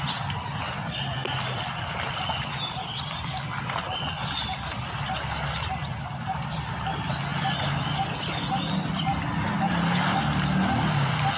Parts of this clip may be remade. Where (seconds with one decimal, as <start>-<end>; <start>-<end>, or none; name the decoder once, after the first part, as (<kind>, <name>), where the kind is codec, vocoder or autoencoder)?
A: none